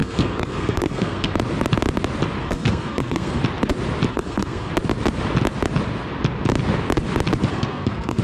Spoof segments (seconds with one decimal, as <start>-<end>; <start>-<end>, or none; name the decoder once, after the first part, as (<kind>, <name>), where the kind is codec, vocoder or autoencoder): 0.0-1.3 (codec, SNAC); 2.4-3.4; 4.1-4.7; 7.5-8.2